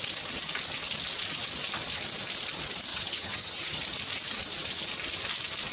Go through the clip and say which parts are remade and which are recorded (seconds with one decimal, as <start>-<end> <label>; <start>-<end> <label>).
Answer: 0.0-2.9 recorded; 2.9-3.8 remade; 3.8-5.7 recorded